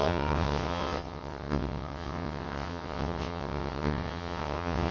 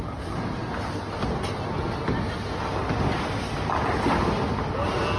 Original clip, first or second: second